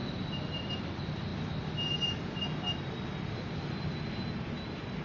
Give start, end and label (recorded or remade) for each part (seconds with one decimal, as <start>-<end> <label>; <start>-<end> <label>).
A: 0.0-5.0 recorded